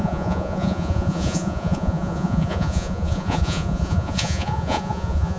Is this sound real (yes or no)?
no